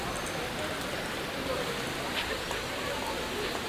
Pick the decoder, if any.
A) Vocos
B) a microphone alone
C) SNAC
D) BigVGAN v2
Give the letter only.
B